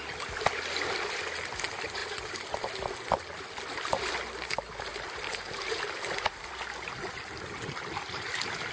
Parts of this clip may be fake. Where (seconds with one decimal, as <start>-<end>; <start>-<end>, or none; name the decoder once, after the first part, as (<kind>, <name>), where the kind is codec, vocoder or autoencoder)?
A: 4.9-6.5 (vocoder, BigVGAN v2)